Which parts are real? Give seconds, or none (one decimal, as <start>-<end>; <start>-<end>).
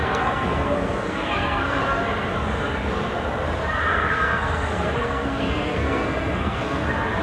1.8-3.9; 6.8-7.2